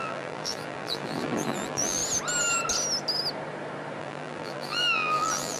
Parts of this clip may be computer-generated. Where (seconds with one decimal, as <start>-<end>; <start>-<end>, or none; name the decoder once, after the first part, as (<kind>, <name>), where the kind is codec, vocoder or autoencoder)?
0.0-2.0 (vocoder, BigVGAN v2); 4.0-5.6

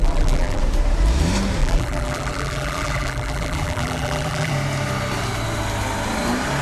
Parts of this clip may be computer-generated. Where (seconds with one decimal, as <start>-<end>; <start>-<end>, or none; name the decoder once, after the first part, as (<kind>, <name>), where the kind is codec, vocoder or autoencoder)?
0.0-0.6 (vocoder, BigVGAN v2); 1.6-4.5

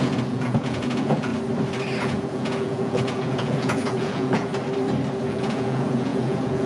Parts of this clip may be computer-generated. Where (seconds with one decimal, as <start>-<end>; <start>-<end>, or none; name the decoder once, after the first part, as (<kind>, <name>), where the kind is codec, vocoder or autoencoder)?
0.0-1.3 (vocoder, Vocos); 2.0-4.5; 5.3-6.7

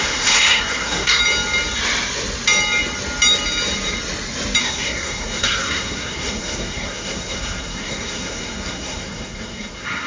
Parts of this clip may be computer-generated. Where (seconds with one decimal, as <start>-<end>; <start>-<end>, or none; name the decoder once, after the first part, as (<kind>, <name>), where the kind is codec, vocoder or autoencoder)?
0.0-1.2 (codec, SNAC); 4.6-10.1

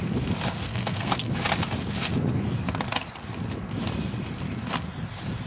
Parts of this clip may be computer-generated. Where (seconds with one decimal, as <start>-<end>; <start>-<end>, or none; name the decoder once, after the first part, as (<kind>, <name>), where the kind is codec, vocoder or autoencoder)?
0.7-1.3 (codec, SNAC)

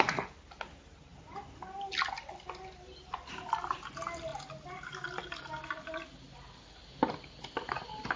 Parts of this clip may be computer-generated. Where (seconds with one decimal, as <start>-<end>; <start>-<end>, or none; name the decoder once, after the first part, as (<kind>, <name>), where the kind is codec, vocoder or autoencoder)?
none

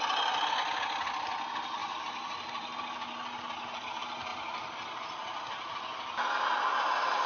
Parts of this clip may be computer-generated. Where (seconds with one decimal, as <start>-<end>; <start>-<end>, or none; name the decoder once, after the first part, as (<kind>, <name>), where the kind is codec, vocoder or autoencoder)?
none